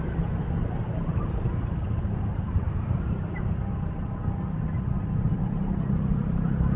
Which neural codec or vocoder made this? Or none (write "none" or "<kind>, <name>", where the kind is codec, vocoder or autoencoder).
none